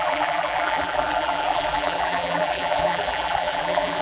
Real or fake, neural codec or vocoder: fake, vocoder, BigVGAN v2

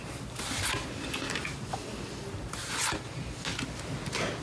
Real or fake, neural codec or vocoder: real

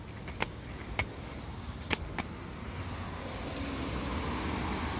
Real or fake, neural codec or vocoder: real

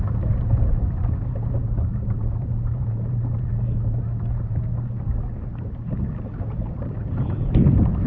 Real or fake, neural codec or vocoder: fake, vocoder, BigVGAN v2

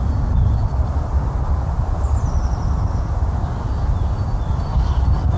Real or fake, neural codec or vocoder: real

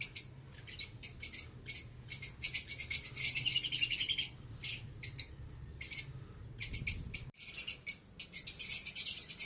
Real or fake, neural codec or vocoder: real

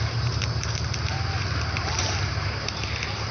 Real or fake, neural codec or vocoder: fake, vocoder, BigVGAN v2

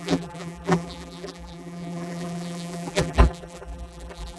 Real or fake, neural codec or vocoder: fake, vocoder, BigVGAN v2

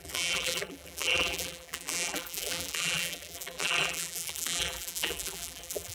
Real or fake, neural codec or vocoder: fake, vocoder, BigVGAN v2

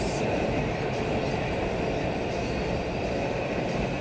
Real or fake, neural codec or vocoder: fake, vocoder, BigVGAN v2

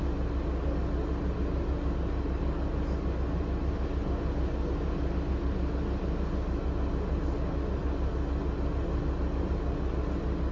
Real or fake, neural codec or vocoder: real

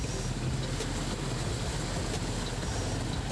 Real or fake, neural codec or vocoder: real